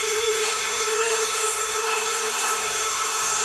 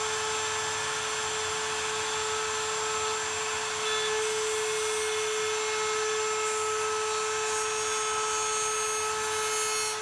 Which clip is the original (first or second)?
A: second